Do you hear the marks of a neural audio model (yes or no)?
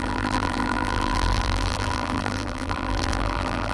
yes